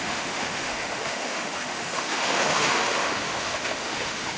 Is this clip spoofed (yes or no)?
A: yes